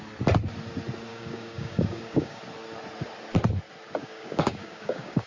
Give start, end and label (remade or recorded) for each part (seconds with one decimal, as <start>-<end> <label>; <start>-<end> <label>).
0.0-1.1 recorded; 1.1-2.4 remade; 2.4-4.0 recorded; 4.0-5.3 remade